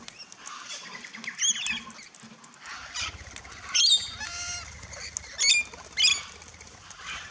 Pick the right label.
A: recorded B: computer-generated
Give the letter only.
A